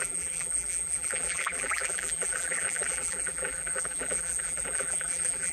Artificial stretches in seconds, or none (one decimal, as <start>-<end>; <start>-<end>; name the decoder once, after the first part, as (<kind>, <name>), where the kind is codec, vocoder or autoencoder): 0.0-5.5 (vocoder, BigVGAN v2)